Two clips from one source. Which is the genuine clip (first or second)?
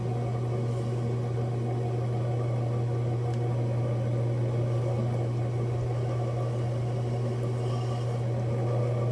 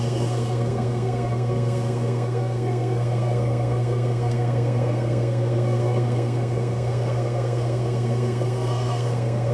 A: first